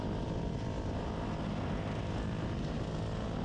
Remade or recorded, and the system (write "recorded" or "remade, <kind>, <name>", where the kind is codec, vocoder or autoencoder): recorded